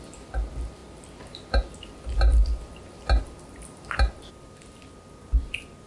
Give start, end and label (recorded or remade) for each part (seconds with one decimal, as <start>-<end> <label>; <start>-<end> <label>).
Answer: 0.0-5.9 recorded